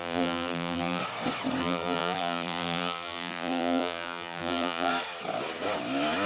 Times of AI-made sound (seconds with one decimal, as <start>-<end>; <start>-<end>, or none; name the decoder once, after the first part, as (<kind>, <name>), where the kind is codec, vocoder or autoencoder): 0.0-1.0 (vocoder, BigVGAN v2); 1.6-4.9